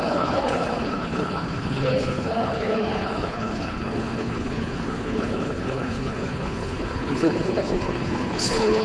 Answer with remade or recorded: remade